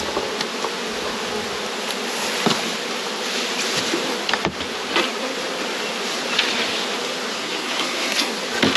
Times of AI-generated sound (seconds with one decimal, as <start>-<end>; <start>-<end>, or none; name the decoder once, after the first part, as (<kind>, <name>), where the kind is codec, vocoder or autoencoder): 7.3-8.3 (codec, SNAC)